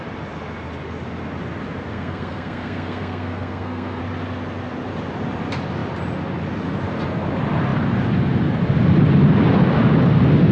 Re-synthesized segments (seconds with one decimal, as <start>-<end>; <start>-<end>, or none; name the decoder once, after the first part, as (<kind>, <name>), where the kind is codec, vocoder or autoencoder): 1.9-4.0 (codec, SNAC)

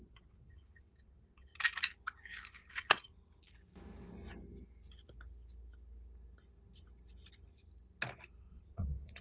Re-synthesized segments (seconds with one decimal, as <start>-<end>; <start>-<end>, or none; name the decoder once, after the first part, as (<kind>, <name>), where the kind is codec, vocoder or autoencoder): 0.0-1.5 (vocoder, WaveNeXt); 2.7-3.1; 8.4-9.2

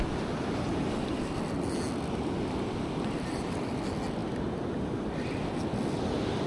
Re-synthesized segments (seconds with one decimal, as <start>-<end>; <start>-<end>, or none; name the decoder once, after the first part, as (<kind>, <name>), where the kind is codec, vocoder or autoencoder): none